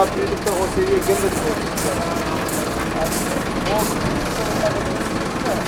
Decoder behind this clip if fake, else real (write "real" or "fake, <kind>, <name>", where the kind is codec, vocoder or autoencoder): real